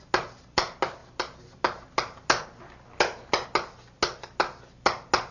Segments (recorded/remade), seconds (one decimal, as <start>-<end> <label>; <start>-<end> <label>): 0.0-5.3 recorded